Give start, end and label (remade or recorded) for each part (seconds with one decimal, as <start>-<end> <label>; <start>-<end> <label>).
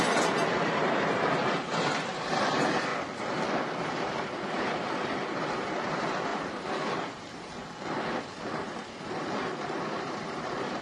0.0-2.9 remade; 2.9-3.8 recorded; 3.8-7.6 remade; 7.6-8.2 recorded; 8.2-10.8 remade